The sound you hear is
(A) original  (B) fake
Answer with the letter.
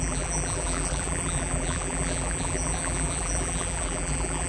B